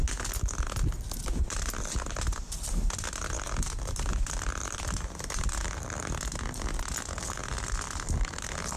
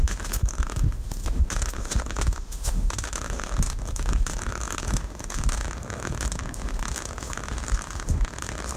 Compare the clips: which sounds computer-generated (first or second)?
second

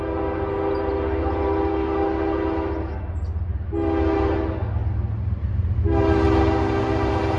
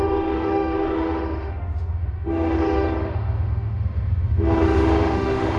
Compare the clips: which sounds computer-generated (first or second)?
second